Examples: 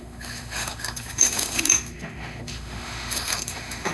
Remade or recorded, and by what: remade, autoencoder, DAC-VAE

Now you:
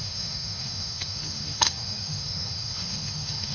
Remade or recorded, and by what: remade, autoencoder, DAC-VAE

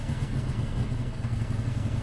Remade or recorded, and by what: remade, codec, SNAC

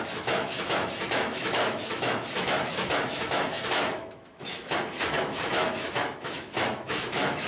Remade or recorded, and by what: remade, autoencoder, DAC-VAE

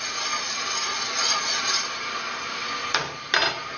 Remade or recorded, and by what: recorded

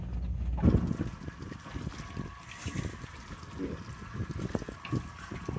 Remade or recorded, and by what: recorded